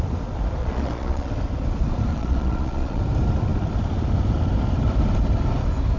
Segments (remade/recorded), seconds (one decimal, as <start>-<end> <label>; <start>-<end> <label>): 0.0-0.6 recorded; 0.6-1.3 remade; 1.3-2.1 recorded; 2.1-3.0 remade; 3.0-6.0 recorded